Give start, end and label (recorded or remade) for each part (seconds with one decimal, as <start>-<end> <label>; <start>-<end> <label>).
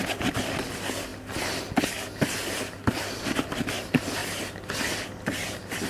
0.0-5.9 recorded